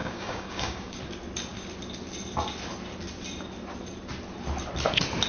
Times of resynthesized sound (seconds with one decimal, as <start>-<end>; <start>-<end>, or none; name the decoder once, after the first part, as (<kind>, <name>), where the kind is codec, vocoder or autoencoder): 0.0-1.0 (codec, DAC)